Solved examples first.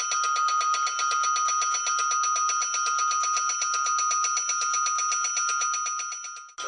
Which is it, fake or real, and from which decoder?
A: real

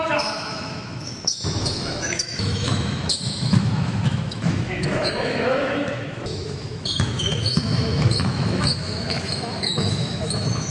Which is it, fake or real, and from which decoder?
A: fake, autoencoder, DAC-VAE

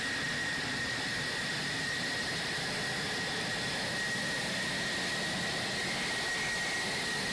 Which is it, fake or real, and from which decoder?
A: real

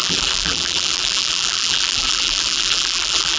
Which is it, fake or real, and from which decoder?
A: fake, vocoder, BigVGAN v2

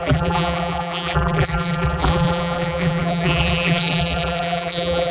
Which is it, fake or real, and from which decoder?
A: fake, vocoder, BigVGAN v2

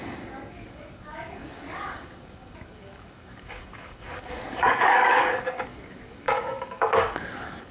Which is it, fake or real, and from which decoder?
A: fake, codec, DAC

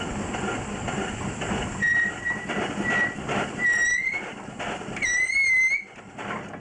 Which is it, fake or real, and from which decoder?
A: real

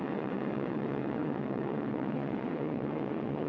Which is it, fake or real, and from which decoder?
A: fake, vocoder, WaveNeXt